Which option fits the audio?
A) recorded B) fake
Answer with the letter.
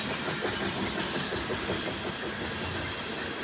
A